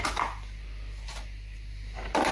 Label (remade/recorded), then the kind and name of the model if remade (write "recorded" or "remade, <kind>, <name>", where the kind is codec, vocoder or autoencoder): recorded